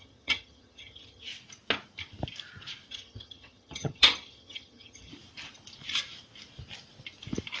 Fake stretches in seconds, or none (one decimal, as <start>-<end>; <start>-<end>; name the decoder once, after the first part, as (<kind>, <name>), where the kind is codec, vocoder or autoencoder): 0.0-1.3 (vocoder, HiFi-GAN); 2.9-5.1